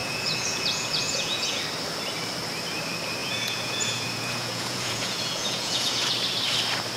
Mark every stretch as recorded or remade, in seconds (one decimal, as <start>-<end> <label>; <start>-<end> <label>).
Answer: 0.0-1.6 remade; 1.6-3.2 recorded; 3.2-6.0 remade; 6.0-7.0 recorded